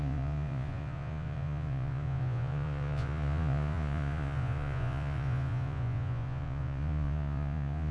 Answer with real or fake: fake